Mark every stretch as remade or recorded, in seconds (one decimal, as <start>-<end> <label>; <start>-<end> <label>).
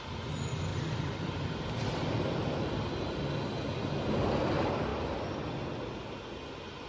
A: 0.0-0.7 recorded; 0.7-2.9 remade; 2.9-4.9 recorded; 4.9-5.5 remade; 5.5-6.9 recorded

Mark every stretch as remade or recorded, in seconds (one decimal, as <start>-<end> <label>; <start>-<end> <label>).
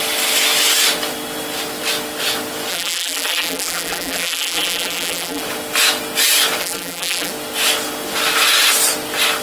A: 0.0-2.7 recorded; 2.7-5.4 remade; 5.4-6.6 recorded; 6.6-7.3 remade; 7.3-9.4 recorded